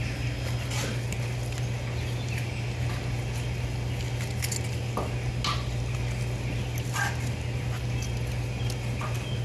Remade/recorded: recorded